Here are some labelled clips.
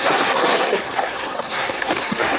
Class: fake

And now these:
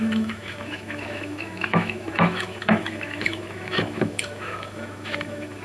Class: fake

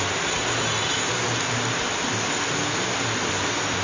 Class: real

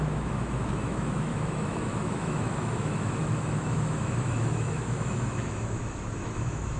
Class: fake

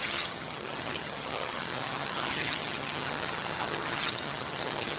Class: fake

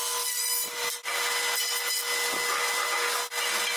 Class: real